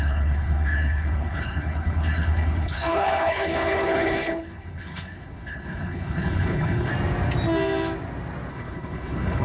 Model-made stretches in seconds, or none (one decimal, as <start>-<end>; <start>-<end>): 0.0-6.9; 8.5-9.4